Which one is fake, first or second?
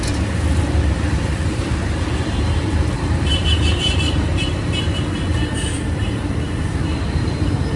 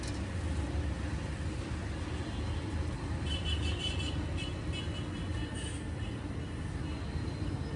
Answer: first